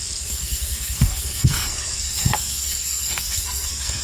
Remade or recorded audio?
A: remade